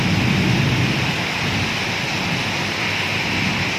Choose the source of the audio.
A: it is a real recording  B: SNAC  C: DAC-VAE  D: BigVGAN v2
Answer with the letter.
A